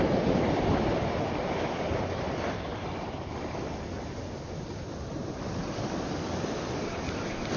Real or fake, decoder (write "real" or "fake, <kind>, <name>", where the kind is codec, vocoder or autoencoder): fake, vocoder, BigVGAN v2